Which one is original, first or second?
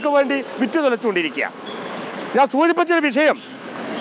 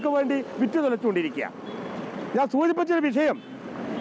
second